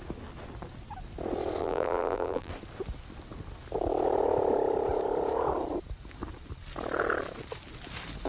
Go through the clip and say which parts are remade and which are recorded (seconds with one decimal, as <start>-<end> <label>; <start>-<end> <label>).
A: 0.0-1.6 recorded; 1.6-2.5 remade; 2.5-8.3 recorded